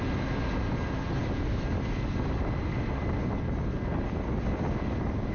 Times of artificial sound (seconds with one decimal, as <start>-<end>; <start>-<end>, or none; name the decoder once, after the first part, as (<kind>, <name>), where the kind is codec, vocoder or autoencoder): none